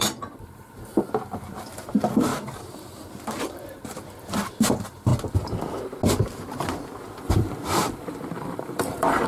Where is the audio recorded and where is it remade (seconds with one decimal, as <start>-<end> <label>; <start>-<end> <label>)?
0.0-2.3 remade; 2.3-3.4 recorded; 3.4-5.1 remade; 5.1-7.2 recorded; 7.2-9.3 remade

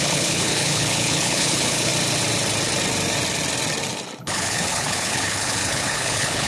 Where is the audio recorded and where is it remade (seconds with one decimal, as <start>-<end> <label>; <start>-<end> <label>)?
0.0-1.9 remade; 1.9-4.2 recorded; 4.2-6.5 remade

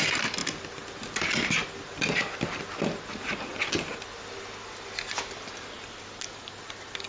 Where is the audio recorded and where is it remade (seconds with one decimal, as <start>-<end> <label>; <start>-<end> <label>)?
0.0-7.1 recorded

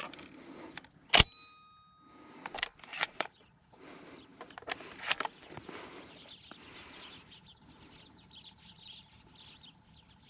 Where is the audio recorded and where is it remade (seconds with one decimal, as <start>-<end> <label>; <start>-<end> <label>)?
0.0-2.9 recorded; 2.9-3.8 remade; 3.8-10.3 recorded

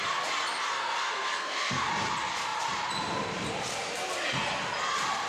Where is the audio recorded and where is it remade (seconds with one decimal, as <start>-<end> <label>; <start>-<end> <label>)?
0.0-0.7 recorded; 0.7-1.9 remade; 1.9-5.3 recorded

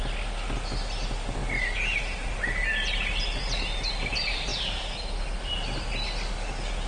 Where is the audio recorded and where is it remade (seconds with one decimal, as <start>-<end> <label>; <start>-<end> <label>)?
0.0-6.9 recorded